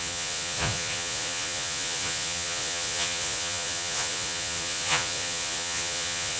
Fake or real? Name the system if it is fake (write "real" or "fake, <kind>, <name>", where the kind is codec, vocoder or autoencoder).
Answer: fake, vocoder, Vocos